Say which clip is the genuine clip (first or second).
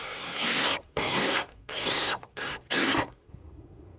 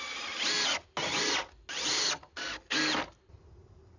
second